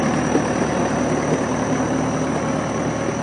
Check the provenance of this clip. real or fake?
real